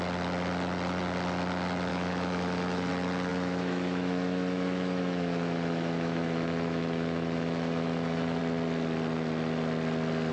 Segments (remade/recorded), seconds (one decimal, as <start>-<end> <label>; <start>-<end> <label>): 0.0-1.9 recorded; 1.9-2.9 remade; 2.9-3.3 recorded; 3.3-8.4 remade; 8.4-10.3 recorded